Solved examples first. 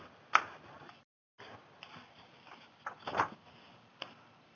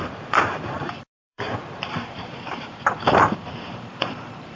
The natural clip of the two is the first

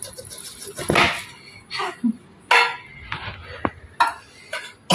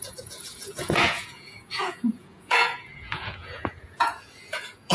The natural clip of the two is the first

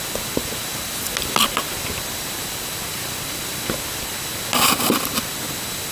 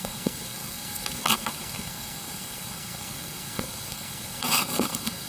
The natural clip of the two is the first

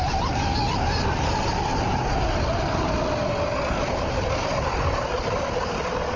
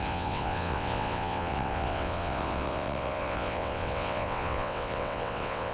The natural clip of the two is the first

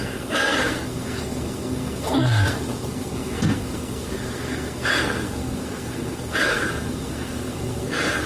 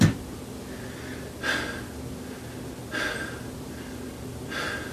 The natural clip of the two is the second